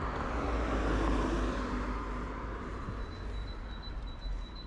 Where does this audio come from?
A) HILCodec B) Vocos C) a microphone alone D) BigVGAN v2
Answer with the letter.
C